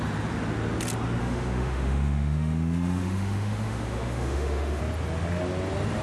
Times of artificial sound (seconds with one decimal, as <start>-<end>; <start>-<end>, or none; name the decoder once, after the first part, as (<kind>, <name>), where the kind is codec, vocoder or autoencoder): 1.2-4.8 (autoencoder, DAC-VAE)